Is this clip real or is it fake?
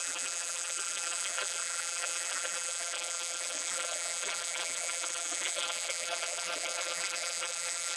fake